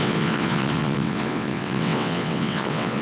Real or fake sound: fake